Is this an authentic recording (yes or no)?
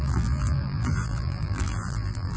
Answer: no